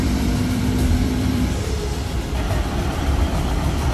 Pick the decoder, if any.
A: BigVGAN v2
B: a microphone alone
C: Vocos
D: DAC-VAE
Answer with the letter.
A